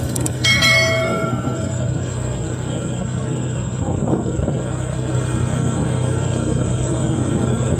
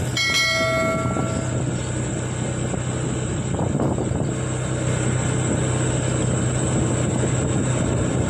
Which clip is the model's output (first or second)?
first